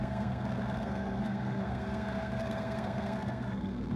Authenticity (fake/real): fake